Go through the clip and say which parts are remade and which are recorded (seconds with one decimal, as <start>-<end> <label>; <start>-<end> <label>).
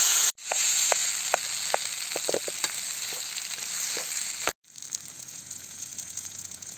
0.0-1.0 remade; 1.0-5.1 recorded; 5.1-6.8 remade